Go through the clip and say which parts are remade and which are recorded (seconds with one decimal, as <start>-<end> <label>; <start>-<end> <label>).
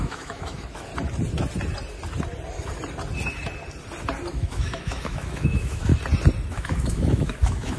0.0-0.9 remade; 0.9-4.3 recorded; 4.3-5.9 remade; 5.9-6.5 recorded; 6.5-7.8 remade